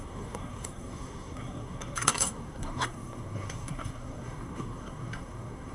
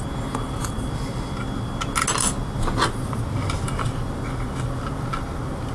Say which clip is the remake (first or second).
first